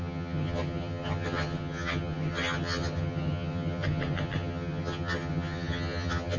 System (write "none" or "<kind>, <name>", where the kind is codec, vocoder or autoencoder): vocoder, HiFi-GAN